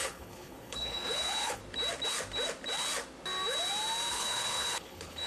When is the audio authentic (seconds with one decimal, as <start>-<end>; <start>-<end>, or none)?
1.6-4.1